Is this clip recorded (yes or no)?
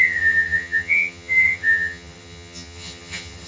no